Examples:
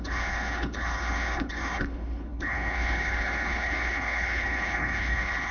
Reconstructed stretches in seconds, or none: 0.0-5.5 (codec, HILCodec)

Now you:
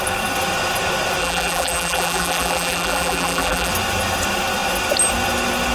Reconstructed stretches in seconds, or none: 1.2-3.7 (vocoder, BigVGAN v2)

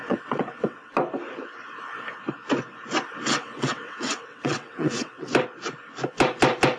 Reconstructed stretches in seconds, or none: 0.0-0.9 (vocoder, WaveNeXt); 3.3-5.3

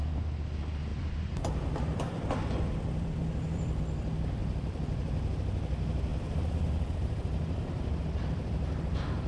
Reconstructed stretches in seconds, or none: 0.9-3.8 (vocoder, BigVGAN v2); 4.4-5.4; 6.1-8.5

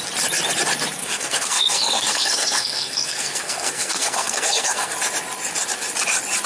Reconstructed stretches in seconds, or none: 1.0-4.9 (codec, SNAC)